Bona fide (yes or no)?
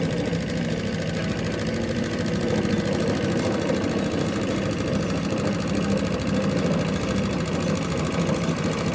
yes